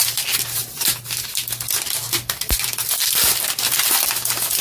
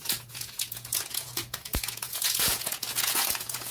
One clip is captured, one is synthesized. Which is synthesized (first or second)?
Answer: second